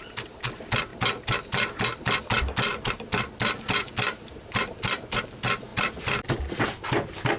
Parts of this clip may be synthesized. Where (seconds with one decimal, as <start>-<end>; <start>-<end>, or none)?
none